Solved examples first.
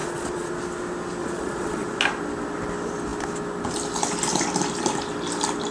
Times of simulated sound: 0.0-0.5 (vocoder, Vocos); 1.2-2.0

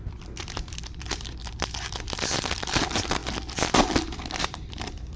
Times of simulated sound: 0.0-1.4 (vocoder, BigVGAN v2); 2.0-3.2; 4.3-5.2

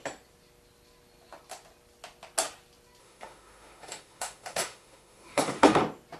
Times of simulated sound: 3.0-5.8 (autoencoder, DAC-VAE)

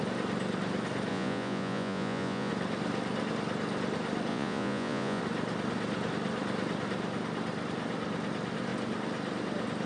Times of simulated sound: 1.1-2.5 (vocoder, Vocos); 4.3-5.2

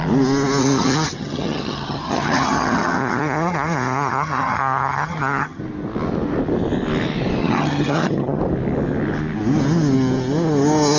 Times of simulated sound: 0.6-5.6 (vocoder, HiFi-GAN); 7.4-8.4